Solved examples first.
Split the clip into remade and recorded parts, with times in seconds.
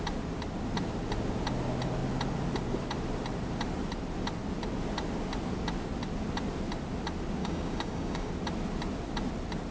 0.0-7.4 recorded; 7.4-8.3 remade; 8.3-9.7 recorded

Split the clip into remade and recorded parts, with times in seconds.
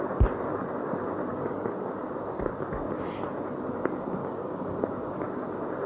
0.0-1.3 recorded; 1.3-1.9 remade; 1.9-4.2 recorded; 4.2-4.8 remade; 4.8-5.9 recorded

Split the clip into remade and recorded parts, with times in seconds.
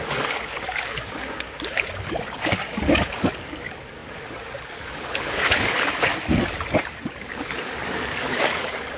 0.0-6.1 remade; 6.1-7.1 recorded; 7.1-9.0 remade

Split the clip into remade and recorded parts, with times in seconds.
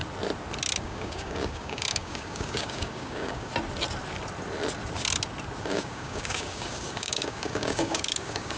0.0-0.8 recorded; 0.8-3.5 remade; 3.5-5.6 recorded; 5.6-8.6 remade